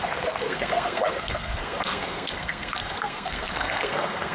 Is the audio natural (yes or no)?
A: no